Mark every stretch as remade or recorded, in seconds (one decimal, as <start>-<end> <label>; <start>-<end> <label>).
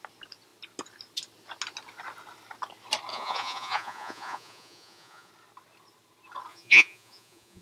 0.0-3.1 recorded; 3.1-5.3 remade; 5.3-6.5 recorded; 6.5-7.6 remade